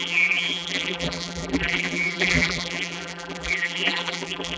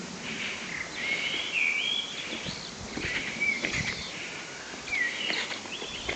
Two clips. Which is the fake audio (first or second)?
first